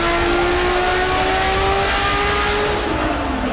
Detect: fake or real real